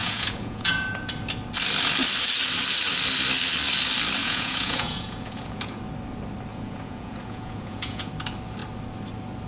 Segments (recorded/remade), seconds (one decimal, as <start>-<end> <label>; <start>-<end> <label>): 0.0-1.1 remade; 1.1-4.2 recorded; 4.2-5.8 remade; 5.8-6.5 recorded; 6.5-8.1 remade; 8.1-9.5 recorded